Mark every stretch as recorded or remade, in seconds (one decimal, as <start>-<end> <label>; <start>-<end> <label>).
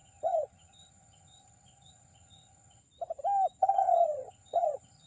0.0-2.8 remade; 2.8-3.6 recorded; 3.6-5.1 remade